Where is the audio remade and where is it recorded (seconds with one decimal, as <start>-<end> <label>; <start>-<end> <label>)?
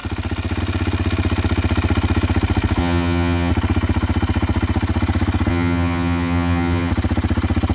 0.0-2.8 recorded; 2.8-3.5 remade; 3.5-5.5 recorded; 5.5-6.9 remade; 6.9-7.7 recorded